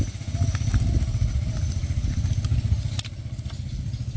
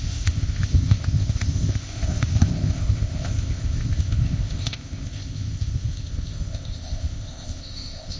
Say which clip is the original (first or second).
first